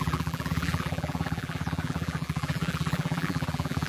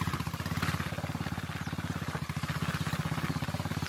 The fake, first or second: first